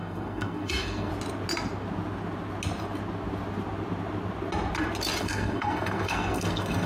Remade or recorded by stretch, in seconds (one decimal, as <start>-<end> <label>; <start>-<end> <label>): 0.0-1.1 remade; 1.1-5.2 recorded; 5.2-6.9 remade